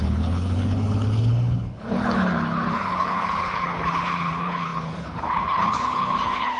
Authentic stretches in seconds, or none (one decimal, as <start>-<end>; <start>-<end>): none

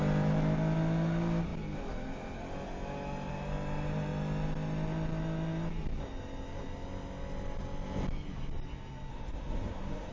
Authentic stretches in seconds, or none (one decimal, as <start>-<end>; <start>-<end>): 0.0-9.1

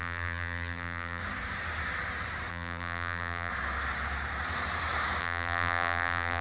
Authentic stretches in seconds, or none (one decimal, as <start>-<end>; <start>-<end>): 1.2-2.5; 3.5-5.2

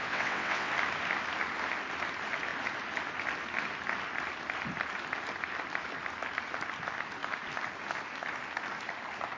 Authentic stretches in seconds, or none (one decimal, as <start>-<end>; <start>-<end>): 0.7-9.4

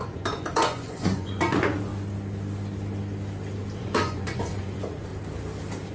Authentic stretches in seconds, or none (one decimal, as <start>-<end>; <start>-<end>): 1.9-3.8; 5.1-5.9

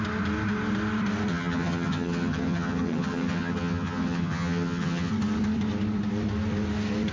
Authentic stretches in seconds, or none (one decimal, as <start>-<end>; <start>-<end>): 0.0-1.3; 5.1-7.1